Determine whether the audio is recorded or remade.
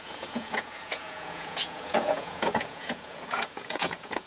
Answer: remade